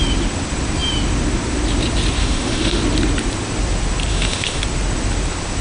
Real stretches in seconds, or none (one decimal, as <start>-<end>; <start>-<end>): 0.0-2.2; 2.8-4.1; 4.6-5.6